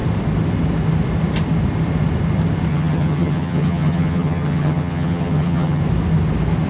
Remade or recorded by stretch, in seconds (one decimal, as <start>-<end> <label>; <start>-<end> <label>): 0.0-2.7 recorded; 2.7-5.8 remade; 5.8-6.7 recorded